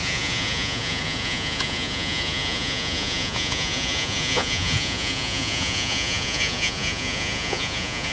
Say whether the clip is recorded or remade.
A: remade